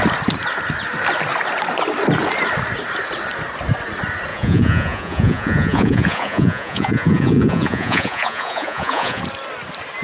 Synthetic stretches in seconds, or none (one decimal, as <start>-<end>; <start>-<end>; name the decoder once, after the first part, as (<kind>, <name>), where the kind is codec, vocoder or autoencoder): 4.3-9.2 (vocoder, Vocos)